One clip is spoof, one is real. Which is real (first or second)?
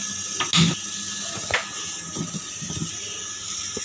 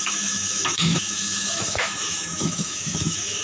first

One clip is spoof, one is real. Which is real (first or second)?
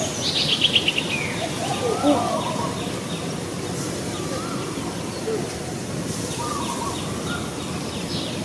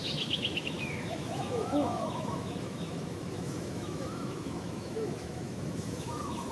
first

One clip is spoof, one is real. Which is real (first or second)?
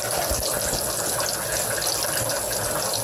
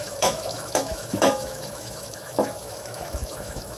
first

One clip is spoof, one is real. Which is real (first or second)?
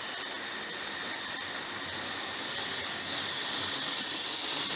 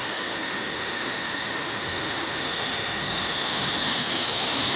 first